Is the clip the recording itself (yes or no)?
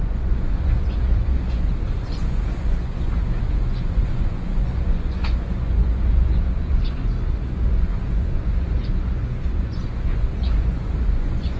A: no